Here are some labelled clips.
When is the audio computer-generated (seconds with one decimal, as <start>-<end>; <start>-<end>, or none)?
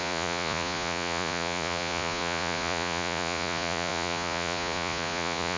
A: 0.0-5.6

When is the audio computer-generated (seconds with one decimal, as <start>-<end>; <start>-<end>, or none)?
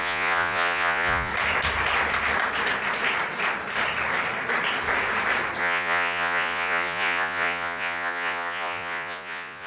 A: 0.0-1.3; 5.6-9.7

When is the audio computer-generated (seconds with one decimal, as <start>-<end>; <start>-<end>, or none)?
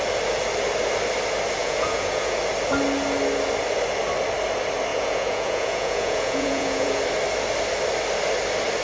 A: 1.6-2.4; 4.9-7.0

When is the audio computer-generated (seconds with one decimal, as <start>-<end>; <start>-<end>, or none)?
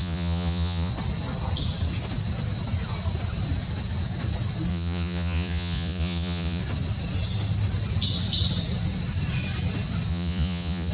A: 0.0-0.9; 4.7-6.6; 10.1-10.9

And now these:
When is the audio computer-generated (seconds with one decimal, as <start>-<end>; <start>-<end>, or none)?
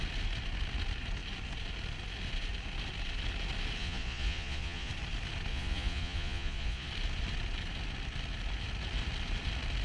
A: 3.8-4.9; 5.5-6.9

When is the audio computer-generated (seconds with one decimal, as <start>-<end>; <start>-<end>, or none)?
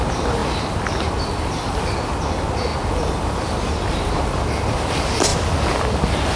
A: none